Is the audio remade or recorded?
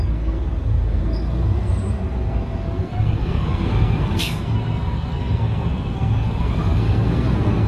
remade